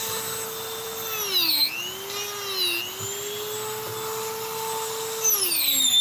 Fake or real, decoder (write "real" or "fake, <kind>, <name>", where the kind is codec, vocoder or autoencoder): real